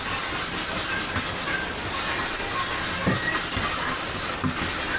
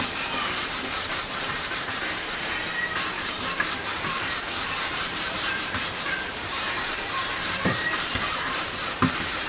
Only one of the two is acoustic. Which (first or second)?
first